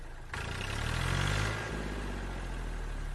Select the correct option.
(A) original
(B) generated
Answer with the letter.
A